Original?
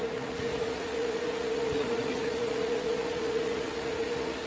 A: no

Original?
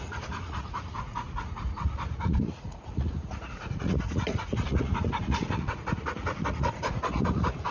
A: no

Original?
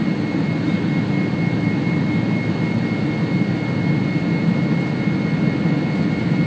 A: yes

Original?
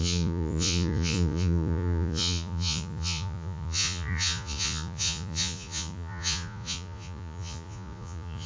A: no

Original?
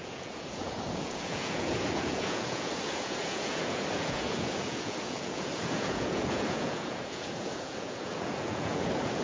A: no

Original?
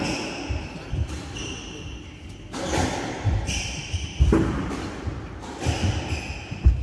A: yes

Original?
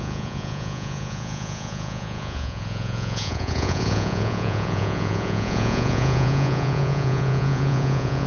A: no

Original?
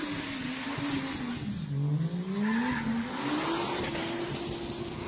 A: yes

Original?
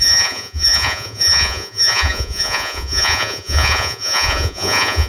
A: no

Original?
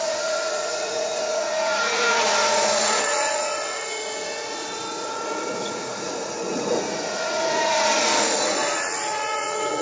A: no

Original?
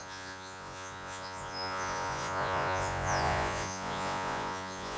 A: no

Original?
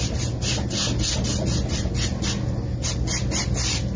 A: yes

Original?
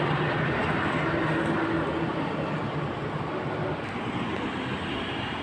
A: yes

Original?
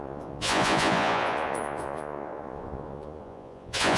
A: no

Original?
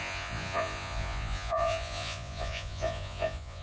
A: no